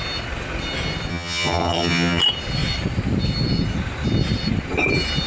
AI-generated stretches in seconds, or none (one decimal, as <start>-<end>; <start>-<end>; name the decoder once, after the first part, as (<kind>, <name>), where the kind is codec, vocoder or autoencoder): 1.1-2.2 (vocoder, HiFi-GAN)

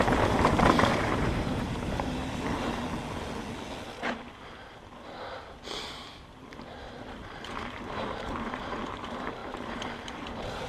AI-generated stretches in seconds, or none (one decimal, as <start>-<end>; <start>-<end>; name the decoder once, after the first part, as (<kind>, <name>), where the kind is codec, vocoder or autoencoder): 0.0-2.2 (vocoder, BigVGAN v2); 7.2-10.7

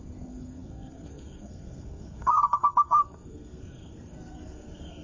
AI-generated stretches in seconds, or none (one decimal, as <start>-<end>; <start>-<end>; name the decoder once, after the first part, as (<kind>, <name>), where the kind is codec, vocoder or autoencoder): 0.0-5.0 (codec, SNAC)

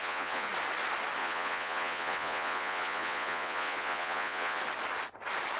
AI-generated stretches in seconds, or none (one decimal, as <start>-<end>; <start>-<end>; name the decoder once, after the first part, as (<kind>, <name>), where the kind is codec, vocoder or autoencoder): 0.0-0.5 (vocoder, Vocos); 1.2-4.6

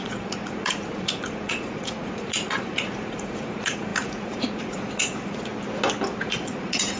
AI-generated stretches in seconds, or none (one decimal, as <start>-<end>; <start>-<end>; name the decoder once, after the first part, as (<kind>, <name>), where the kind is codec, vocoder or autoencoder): 0.0-5.5 (vocoder, Vocos); 6.2-7.0

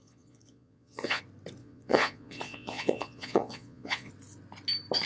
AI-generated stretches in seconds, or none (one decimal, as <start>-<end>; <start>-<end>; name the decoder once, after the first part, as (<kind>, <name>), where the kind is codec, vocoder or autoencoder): 0.0-1.2 (vocoder, Vocos); 1.6-4.1

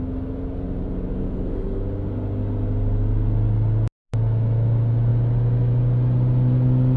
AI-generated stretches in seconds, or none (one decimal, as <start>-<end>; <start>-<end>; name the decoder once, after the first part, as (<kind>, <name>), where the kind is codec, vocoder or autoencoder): 1.2-1.8 (codec, SNAC)

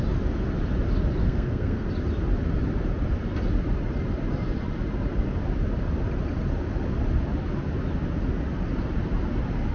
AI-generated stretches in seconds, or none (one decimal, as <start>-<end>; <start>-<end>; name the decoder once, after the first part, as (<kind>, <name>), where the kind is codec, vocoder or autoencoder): 1.2-1.9 (codec, SNAC)